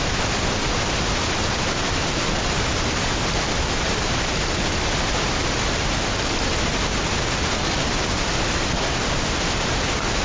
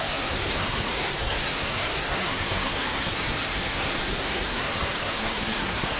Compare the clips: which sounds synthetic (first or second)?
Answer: second